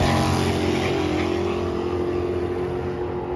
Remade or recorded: recorded